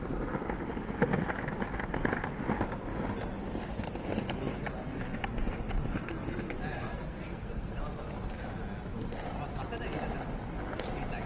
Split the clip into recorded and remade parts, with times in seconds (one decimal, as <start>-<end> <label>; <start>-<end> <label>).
0.0-6.9 recorded; 6.9-7.8 remade; 7.8-11.3 recorded